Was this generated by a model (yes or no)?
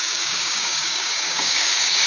yes